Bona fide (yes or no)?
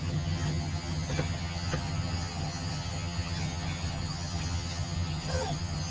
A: no